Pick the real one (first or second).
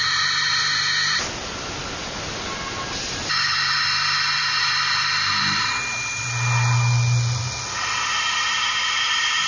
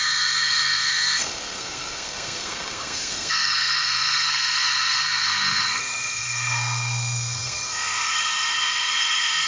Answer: first